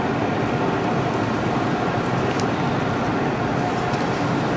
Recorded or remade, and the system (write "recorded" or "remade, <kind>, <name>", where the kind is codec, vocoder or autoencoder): recorded